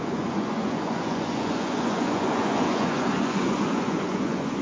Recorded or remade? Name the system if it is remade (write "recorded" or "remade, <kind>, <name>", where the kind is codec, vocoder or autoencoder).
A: remade, vocoder, Vocos